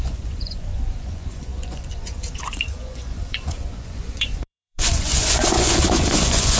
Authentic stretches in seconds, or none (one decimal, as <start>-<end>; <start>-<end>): none